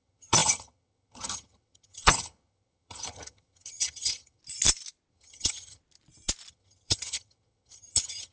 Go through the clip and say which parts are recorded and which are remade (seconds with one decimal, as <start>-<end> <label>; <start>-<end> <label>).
0.0-4.4 remade; 4.4-5.1 recorded; 5.1-5.8 remade; 5.8-6.5 recorded; 6.5-8.3 remade